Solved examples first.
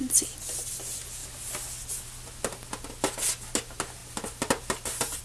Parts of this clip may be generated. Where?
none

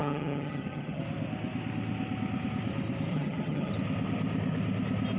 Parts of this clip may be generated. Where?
0.0-1.0 (vocoder, HiFi-GAN); 3.1-3.7